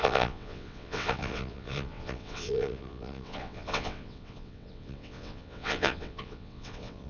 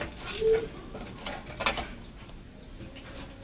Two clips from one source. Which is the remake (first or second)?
first